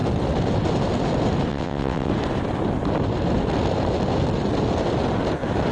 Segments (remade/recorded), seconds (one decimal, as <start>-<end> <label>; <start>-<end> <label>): 0.0-1.5 recorded; 1.5-2.1 remade; 2.1-5.7 recorded